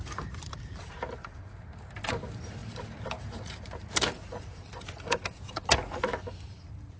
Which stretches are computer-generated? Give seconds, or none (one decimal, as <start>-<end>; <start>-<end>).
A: 0.0-7.0